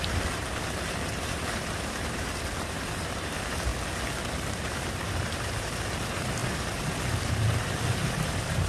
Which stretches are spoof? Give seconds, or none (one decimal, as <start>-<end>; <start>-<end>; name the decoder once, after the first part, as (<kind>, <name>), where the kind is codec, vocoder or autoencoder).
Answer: 0.0-3.7 (vocoder, BigVGAN v2); 4.3-8.7